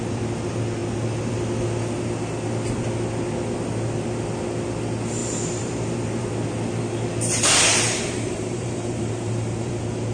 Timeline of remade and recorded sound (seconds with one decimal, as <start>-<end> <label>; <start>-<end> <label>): 0.0-5.2 recorded; 5.2-6.3 remade; 6.3-7.7 recorded; 7.7-9.7 remade; 9.7-10.1 recorded